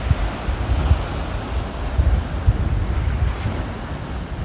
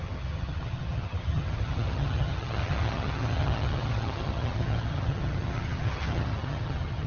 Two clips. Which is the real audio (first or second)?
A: first